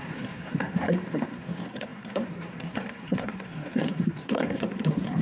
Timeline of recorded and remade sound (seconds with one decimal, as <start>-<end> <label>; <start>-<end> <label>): 0.0-5.2 remade